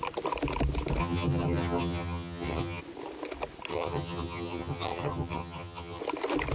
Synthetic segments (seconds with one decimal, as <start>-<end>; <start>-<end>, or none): 1.0-2.8; 3.7-6.0